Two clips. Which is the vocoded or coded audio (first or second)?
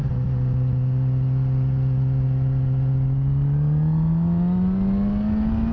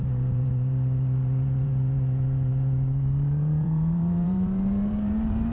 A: second